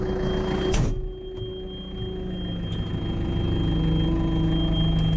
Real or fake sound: real